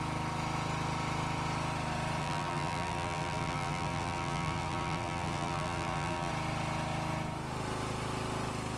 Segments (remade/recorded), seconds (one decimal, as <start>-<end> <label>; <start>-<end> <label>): 0.0-2.2 recorded; 2.2-6.3 remade; 6.3-8.8 recorded